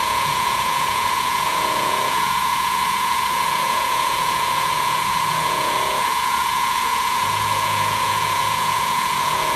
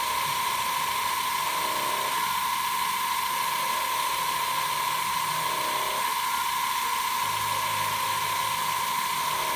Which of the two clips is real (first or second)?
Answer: second